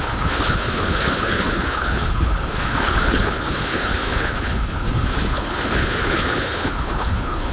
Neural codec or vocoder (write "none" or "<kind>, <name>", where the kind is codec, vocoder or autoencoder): codec, HILCodec